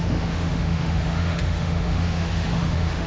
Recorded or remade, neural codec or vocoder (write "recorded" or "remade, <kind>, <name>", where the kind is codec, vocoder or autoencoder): remade, autoencoder, DAC-VAE